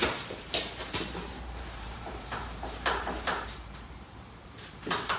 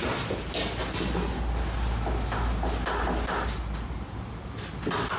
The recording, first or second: second